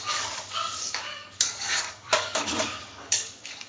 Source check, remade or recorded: remade